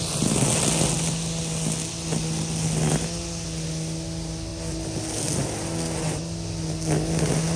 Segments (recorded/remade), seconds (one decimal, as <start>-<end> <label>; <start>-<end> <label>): 0.0-7.6 recorded